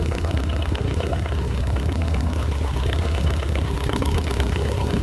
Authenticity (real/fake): fake